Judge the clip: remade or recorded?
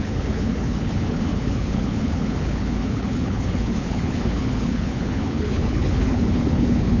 remade